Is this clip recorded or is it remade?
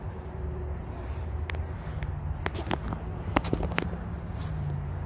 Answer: recorded